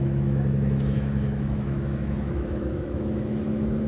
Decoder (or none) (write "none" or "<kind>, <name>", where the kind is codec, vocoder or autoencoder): autoencoder, DAC-VAE